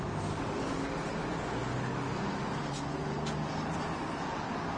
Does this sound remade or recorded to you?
recorded